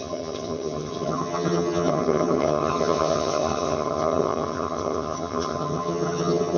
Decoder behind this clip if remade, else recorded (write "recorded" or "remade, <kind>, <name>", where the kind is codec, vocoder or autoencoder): remade, vocoder, HiFi-GAN